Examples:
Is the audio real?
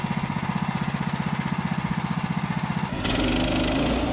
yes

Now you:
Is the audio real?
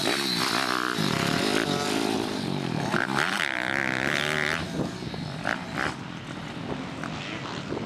yes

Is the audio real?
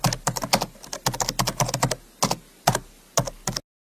yes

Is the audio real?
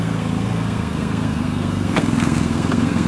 no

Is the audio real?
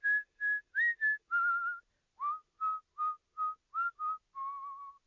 yes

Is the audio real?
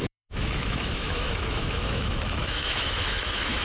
no